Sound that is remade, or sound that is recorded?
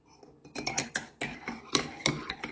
recorded